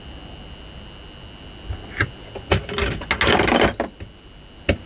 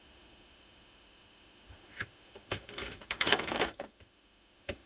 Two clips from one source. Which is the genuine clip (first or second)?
first